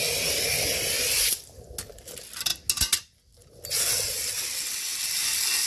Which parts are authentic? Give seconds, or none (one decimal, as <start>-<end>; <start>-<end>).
0.0-5.7